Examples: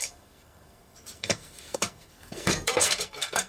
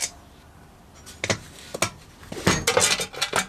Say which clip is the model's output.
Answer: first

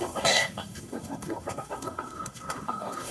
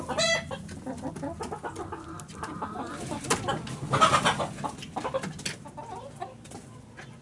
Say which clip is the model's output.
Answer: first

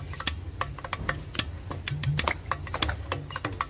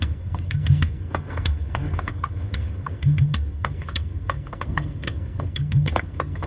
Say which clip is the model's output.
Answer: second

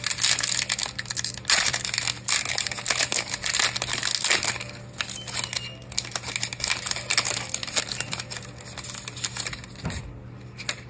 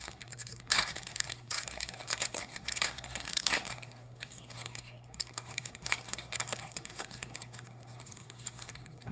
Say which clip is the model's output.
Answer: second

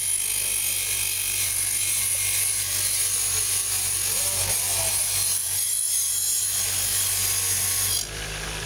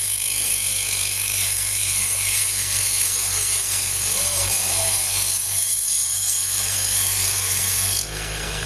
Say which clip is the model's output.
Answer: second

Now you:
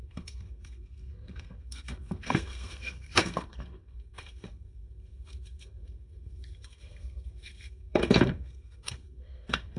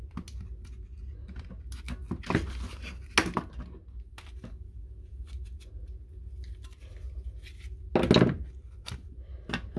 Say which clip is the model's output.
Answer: first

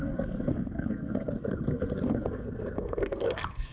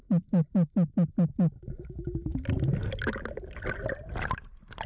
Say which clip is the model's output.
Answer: first